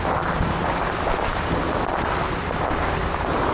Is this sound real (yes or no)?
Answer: yes